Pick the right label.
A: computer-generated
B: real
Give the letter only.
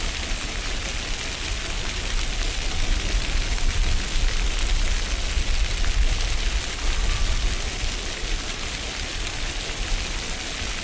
B